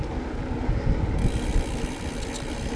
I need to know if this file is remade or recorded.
recorded